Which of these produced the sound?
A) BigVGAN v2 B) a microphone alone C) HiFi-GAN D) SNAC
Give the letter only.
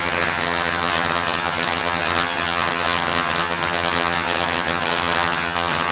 C